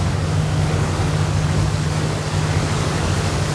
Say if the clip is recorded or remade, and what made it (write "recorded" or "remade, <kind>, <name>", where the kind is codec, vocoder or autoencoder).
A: remade, codec, DAC